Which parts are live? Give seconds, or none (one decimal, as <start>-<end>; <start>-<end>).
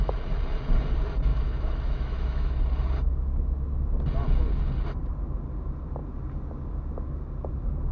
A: 0.0-1.3; 2.6-7.9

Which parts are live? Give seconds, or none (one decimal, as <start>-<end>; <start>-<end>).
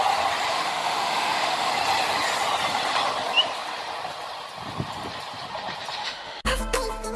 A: 0.0-0.5; 1.7-6.0; 6.6-7.2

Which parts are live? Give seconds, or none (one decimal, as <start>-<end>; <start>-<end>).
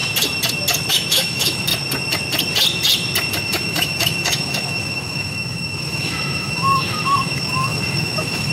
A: 0.0-0.9; 1.7-3.3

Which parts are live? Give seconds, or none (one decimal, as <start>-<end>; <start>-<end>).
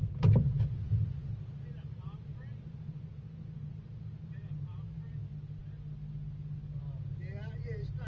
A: 0.0-8.1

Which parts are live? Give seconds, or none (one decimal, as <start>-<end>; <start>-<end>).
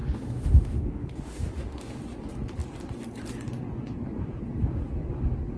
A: 2.0-5.6